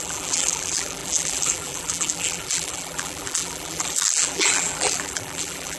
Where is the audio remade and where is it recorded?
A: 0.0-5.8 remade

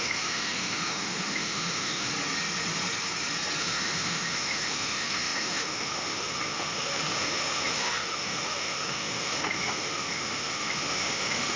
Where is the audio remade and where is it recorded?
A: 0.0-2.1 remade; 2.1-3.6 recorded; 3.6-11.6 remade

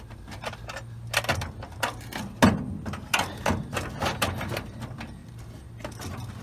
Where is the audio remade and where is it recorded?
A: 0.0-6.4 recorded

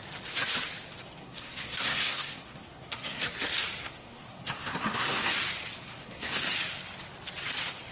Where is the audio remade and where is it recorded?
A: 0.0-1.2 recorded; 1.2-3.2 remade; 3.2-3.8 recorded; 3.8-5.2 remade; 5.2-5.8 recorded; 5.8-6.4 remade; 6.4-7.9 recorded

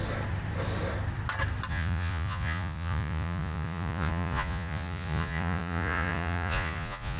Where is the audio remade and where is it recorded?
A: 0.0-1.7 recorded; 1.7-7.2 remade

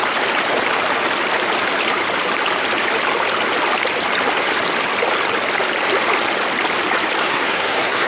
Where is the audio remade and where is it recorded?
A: 0.0-7.2 recorded; 7.2-8.1 remade

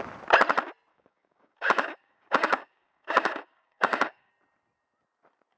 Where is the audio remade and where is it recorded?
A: 0.0-0.9 recorded; 0.9-4.3 remade; 4.3-5.6 recorded